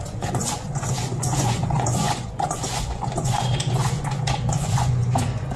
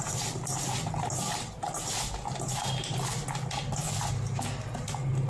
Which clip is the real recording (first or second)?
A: second